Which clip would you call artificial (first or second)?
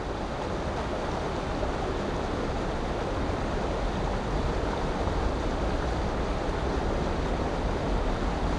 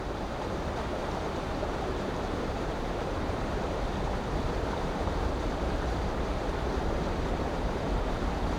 second